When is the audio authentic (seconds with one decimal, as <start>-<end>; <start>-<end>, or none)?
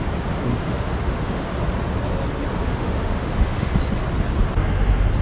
0.0-0.5; 1.5-2.6; 3.7-5.2